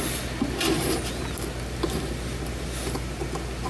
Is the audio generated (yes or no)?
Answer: no